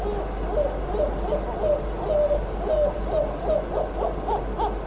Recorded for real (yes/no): yes